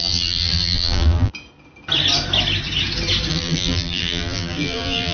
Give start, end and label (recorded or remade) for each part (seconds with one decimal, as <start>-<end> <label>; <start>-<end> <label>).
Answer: 0.0-1.3 remade; 1.3-3.3 recorded; 3.3-5.1 remade